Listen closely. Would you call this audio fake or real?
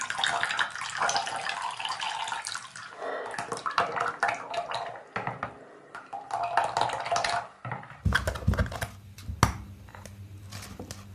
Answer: real